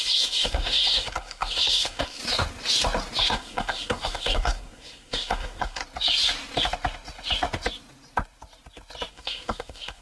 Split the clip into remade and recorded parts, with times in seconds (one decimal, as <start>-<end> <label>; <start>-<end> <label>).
0.0-2.2 remade; 2.2-3.2 recorded; 3.2-5.8 remade; 5.8-9.1 recorded; 9.1-10.0 remade